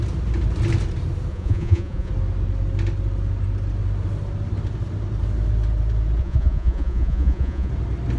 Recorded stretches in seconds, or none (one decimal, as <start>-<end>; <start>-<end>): 0.0-1.3; 2.1-6.2; 7.7-8.2